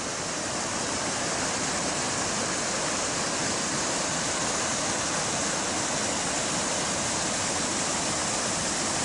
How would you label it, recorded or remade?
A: recorded